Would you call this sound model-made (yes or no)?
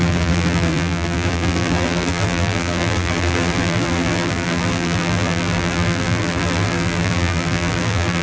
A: yes